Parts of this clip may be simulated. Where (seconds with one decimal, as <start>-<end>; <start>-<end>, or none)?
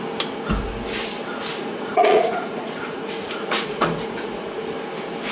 1.5-4.7